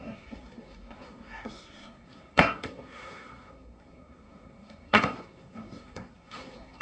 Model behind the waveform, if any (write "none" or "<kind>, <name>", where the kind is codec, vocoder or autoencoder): codec, SNAC